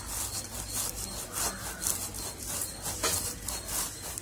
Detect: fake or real real